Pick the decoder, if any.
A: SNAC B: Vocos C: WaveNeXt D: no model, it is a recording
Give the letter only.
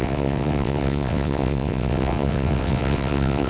C